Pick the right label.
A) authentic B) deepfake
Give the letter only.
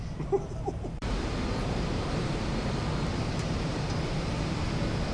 B